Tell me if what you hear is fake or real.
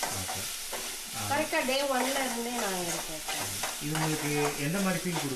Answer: real